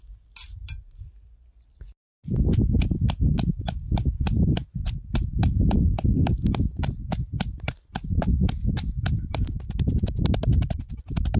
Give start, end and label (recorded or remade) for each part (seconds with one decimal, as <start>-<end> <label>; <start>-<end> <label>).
0.0-10.5 recorded; 10.5-11.4 remade